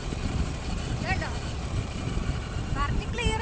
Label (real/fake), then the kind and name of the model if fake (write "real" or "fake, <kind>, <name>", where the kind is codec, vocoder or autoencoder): fake, vocoder, BigVGAN v2